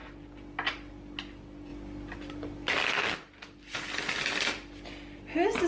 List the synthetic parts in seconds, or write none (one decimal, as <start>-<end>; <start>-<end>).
none